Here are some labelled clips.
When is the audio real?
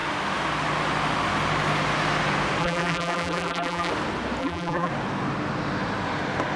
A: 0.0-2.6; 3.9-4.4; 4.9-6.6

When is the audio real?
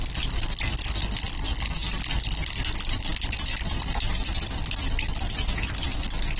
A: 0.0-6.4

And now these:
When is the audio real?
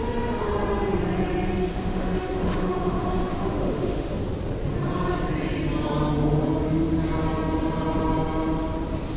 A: 0.0-1.7; 4.2-9.2